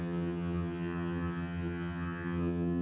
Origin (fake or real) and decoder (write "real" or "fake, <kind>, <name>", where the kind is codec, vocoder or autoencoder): fake, vocoder, HiFi-GAN